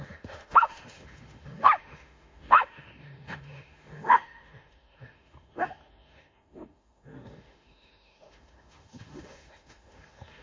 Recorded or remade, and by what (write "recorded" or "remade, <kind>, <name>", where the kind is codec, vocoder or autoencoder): remade, autoencoder, DAC-VAE